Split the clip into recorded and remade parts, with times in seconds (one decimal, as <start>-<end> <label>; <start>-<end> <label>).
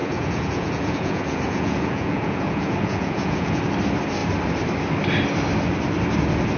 0.0-3.6 remade; 3.6-6.6 recorded